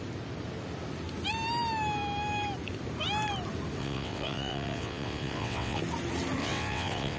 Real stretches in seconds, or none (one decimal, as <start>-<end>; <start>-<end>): 0.0-3.8; 5.8-6.4